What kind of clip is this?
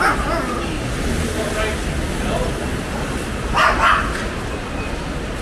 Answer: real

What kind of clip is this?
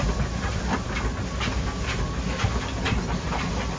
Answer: real